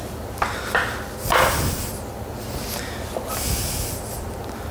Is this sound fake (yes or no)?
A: no